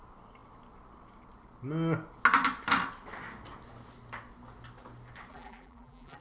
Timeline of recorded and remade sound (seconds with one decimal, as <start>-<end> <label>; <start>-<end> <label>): 0.0-5.3 recorded; 5.3-6.2 remade